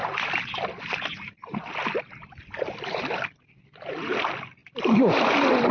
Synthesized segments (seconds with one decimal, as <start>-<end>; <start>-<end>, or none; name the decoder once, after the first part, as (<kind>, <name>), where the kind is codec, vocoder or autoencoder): 0.0-5.7 (vocoder, BigVGAN v2)